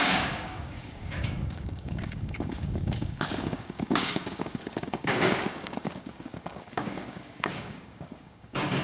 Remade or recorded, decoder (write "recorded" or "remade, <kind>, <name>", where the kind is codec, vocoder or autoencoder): remade, codec, DAC